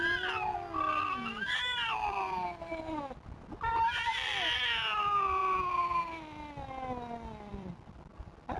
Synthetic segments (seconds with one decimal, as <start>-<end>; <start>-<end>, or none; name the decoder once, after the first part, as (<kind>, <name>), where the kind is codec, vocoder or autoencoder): 1.3-4.3 (vocoder, BigVGAN v2); 7.5-8.1